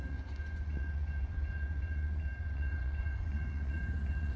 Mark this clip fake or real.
fake